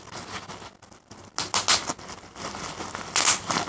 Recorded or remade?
recorded